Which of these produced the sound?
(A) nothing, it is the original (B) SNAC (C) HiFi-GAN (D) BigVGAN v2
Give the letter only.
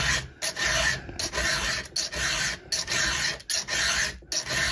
A